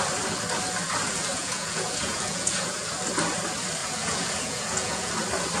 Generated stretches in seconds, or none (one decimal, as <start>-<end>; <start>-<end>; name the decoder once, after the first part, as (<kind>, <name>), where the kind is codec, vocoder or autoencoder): 1.3-2.8 (vocoder, Vocos); 3.8-5.1